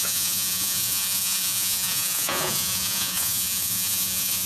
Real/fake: fake